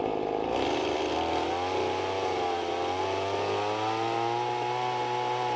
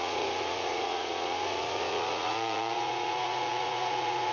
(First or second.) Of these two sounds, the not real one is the second